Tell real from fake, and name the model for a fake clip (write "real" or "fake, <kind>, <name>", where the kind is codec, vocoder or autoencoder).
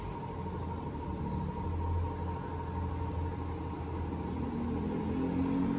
real